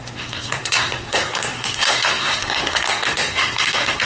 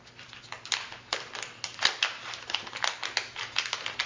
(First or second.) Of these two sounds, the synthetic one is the first